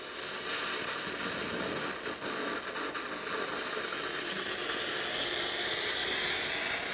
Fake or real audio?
real